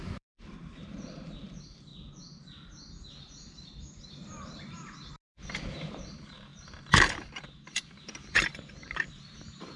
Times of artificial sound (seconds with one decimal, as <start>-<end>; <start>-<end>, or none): 0.0-1.9; 5.1-9.8